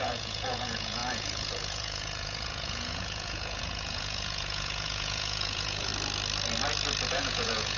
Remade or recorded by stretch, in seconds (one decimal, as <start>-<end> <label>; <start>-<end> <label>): 0.0-5.9 remade; 5.9-7.1 recorded; 7.1-7.8 remade